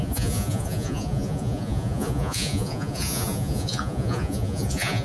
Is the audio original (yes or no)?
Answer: no